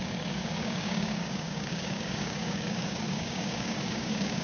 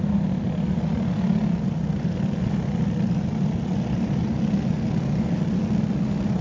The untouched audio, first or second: second